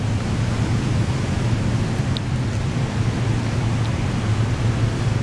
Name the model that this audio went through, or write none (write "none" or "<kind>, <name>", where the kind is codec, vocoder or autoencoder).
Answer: none